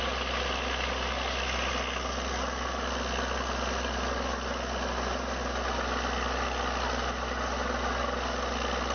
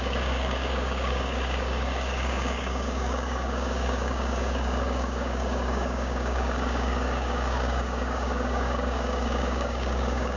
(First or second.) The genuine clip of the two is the first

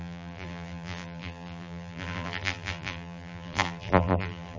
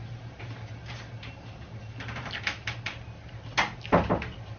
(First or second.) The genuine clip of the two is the second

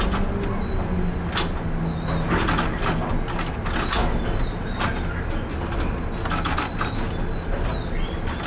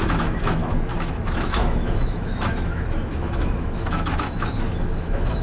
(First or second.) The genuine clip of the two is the first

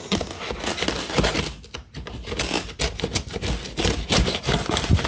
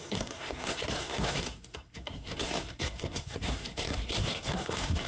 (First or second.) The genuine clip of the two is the first